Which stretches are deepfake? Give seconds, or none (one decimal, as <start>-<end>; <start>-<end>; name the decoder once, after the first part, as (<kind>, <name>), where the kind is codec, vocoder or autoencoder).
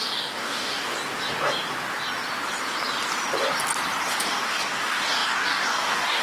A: 0.0-0.9 (codec, DAC); 4.1-6.2